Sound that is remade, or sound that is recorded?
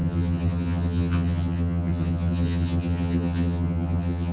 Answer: remade